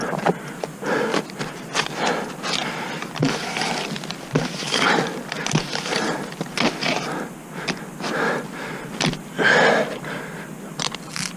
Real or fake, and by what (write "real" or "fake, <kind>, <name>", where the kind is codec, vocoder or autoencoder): real